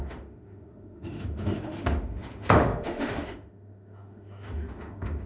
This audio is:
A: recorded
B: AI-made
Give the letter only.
B